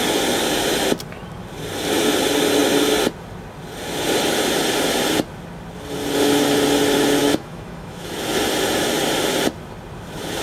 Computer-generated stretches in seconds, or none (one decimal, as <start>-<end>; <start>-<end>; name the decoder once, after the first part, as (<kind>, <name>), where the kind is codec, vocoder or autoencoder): 7.2-8.1 (autoencoder, DAC-VAE)